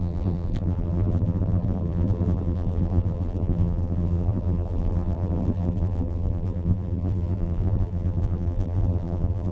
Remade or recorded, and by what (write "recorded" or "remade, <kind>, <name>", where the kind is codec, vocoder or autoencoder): remade, vocoder, BigVGAN v2